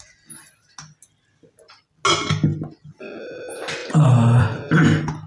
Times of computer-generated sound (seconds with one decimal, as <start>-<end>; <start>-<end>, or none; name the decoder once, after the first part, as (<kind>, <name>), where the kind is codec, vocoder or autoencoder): none